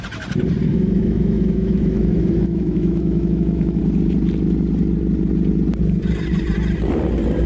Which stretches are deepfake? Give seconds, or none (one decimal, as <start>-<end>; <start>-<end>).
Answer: 0.7-3.8